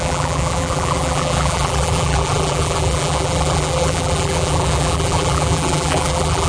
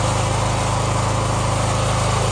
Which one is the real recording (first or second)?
second